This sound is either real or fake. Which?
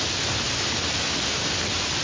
real